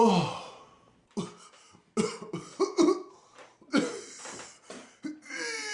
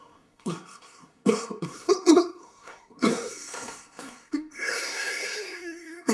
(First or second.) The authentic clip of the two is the first